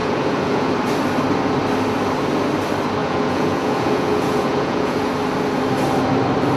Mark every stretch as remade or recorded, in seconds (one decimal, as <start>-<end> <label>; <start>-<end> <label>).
0.0-0.7 remade; 0.7-3.0 recorded; 3.0-5.1 remade; 5.1-6.6 recorded